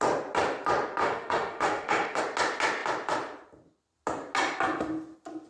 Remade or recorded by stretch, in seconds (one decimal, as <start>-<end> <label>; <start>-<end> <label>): 0.0-1.0 recorded; 1.0-2.2 remade; 2.2-5.5 recorded